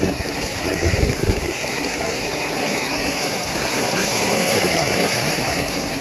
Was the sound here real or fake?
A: fake